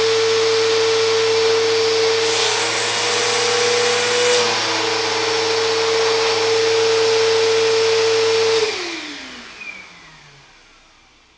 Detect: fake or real real